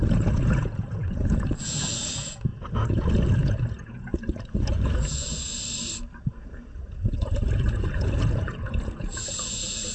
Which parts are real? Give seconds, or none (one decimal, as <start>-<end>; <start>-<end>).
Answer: 5.5-6.2